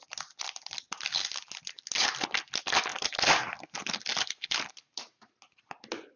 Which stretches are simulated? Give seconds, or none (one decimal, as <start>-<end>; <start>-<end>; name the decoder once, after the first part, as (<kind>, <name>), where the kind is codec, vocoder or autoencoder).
none